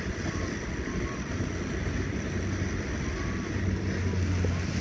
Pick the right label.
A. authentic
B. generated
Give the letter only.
A